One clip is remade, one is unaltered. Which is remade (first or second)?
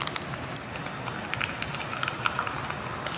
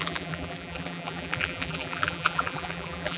second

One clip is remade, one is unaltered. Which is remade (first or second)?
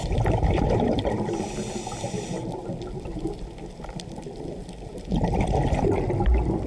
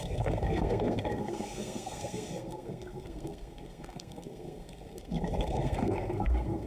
second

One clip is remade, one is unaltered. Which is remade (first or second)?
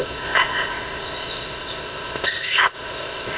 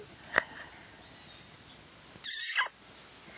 first